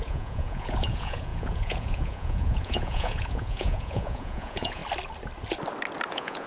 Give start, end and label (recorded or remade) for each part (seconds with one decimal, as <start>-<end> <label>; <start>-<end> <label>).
0.0-4.8 remade; 4.8-6.1 recorded; 6.1-6.5 remade